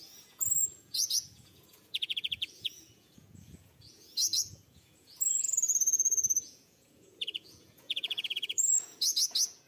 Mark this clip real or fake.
fake